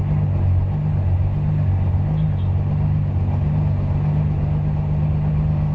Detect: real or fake real